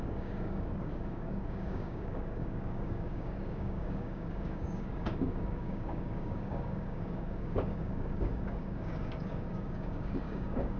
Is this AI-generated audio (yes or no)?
yes